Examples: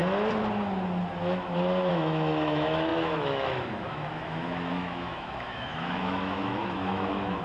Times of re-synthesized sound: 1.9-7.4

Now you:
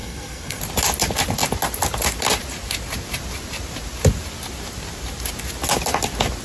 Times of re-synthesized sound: 0.0-0.6

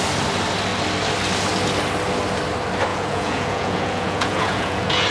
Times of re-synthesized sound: 2.9-5.1

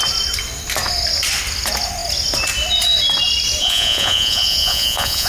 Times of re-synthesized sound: 3.6-5.3

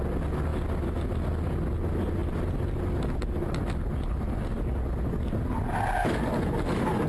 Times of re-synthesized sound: none

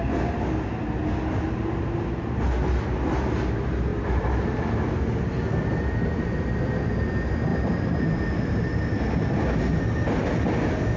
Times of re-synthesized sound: 3.9-4.7; 7.5-8.0